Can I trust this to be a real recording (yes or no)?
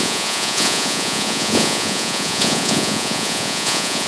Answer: no